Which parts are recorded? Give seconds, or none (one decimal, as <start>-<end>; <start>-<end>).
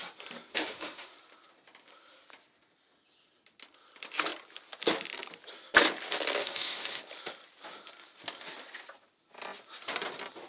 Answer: 0.0-0.5; 1.1-6.4; 7.0-10.5